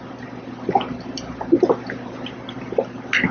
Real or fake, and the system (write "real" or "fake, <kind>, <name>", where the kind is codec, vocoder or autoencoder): real